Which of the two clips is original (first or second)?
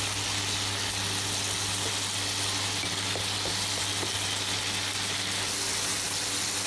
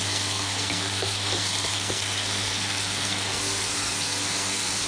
first